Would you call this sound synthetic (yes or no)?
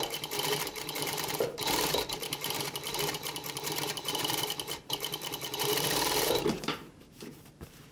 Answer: yes